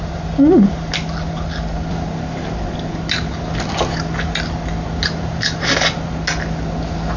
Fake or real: real